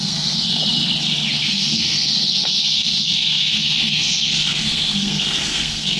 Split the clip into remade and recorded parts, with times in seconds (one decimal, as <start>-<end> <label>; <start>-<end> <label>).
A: 0.0-0.6 remade; 0.6-1.4 recorded; 1.4-6.0 remade